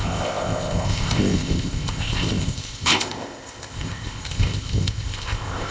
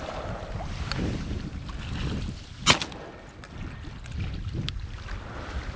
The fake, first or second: first